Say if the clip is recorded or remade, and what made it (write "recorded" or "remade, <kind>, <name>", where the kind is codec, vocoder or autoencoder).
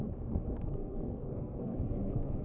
remade, codec, SNAC